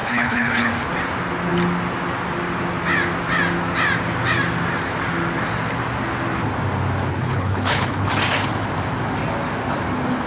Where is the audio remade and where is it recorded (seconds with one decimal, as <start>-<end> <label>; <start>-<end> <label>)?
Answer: 0.0-0.7 remade; 0.7-7.1 recorded; 7.1-8.1 remade; 8.1-10.3 recorded